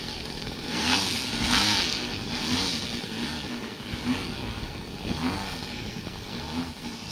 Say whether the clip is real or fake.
fake